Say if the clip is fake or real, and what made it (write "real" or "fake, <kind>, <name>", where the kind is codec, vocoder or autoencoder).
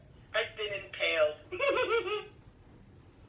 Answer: real